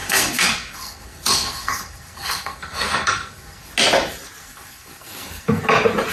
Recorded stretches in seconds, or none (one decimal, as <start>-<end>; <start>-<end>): 3.7-4.4; 5.6-6.1